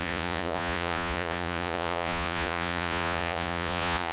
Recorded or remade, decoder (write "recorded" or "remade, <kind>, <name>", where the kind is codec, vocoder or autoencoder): remade, vocoder, Vocos